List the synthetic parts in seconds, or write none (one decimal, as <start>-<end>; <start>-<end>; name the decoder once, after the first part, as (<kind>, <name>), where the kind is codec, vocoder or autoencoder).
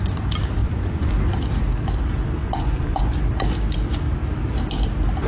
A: 0.6-1.1 (vocoder, Vocos); 2.4-3.2